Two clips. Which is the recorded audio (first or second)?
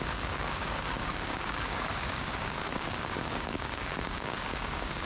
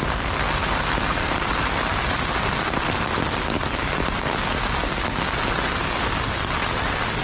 second